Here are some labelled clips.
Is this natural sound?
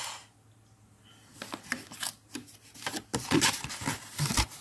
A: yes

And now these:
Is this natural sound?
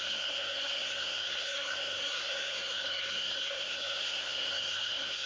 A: no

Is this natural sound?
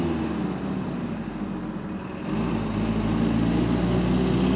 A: yes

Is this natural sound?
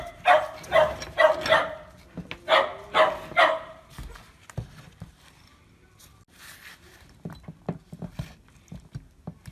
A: yes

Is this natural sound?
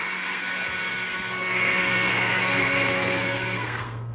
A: no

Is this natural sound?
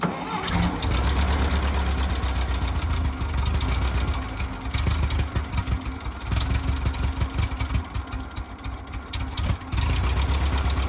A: yes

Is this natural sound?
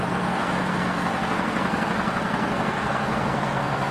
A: no